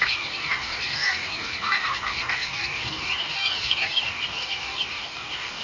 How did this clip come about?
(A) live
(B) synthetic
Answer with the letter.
B